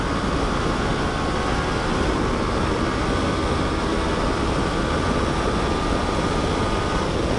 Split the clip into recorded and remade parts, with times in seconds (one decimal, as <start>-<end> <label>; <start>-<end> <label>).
0.0-7.4 recorded